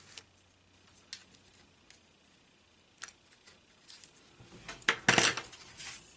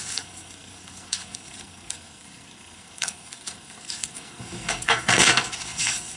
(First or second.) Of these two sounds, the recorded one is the first